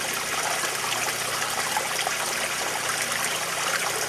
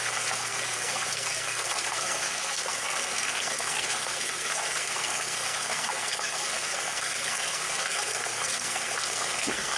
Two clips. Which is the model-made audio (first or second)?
second